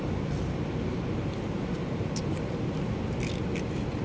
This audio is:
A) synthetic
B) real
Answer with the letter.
B